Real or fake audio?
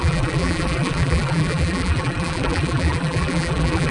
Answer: fake